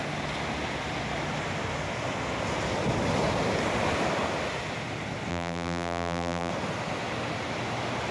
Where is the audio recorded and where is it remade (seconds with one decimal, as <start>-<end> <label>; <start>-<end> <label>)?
0.0-5.3 recorded; 5.3-6.5 remade; 6.5-8.1 recorded